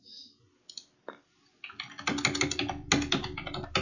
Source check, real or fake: real